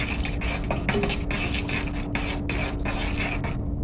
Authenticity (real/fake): real